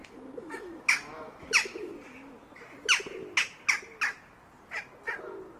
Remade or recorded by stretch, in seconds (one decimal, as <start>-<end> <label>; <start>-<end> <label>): 0.0-1.9 remade; 1.9-5.6 recorded